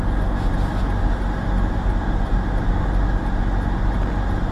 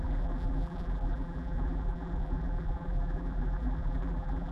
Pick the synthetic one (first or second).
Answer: second